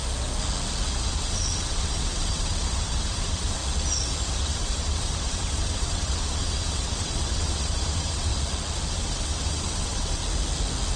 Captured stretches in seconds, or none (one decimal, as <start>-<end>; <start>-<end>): 0.0-1.0; 3.6-4.3; 8.3-8.9; 10.2-11.0